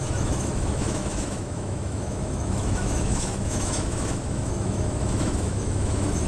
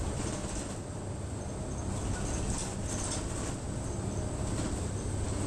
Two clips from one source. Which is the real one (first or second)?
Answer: second